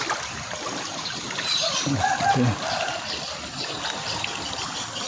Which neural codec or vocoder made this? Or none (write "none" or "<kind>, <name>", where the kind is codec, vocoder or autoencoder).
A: none